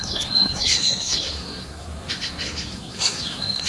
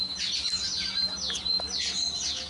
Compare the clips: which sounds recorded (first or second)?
second